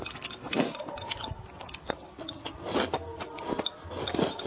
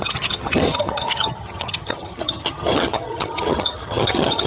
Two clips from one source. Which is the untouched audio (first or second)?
first